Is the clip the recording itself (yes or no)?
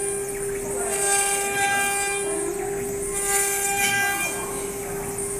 yes